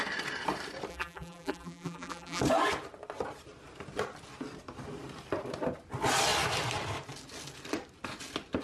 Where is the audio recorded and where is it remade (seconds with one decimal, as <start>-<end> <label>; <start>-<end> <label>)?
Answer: 0.0-0.9 recorded; 0.9-2.4 remade; 2.4-8.6 recorded